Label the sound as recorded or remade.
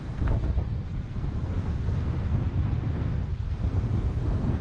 remade